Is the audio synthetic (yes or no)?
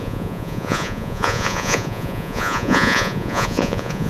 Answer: yes